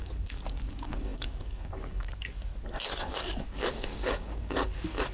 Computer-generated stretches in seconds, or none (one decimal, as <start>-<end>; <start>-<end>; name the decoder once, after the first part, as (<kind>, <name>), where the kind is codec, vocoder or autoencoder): 0.0-2.5 (codec, DAC); 3.0-5.1

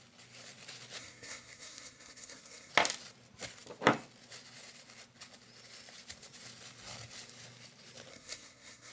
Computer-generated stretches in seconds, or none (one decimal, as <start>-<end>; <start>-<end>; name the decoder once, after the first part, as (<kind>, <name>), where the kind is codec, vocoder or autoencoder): 1.0-2.7 (codec, SNAC); 8.1-8.9

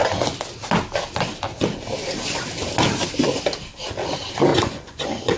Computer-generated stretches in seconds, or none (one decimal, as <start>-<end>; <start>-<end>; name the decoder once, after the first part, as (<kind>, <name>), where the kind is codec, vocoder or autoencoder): 4.5-5.4 (vocoder, Vocos)

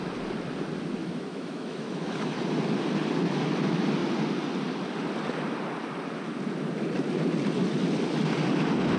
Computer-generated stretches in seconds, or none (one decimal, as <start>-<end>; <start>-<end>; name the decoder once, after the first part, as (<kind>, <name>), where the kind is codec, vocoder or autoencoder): 1.0-2.4 (autoencoder, DAC-VAE)

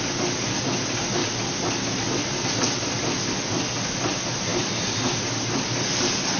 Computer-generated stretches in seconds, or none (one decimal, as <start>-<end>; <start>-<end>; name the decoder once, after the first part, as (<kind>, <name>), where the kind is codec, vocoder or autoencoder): 1.2-2.9 (vocoder, BigVGAN v2); 4.5-5.9

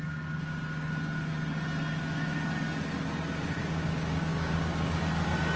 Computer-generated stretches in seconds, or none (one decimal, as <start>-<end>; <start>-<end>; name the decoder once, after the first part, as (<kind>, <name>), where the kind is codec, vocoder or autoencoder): 3.6-5.0 (codec, DAC)